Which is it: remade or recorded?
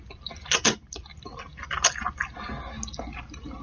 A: recorded